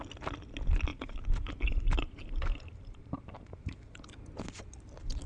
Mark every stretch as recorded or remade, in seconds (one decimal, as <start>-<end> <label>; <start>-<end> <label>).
0.0-0.9 recorded; 0.9-4.1 remade; 4.1-5.3 recorded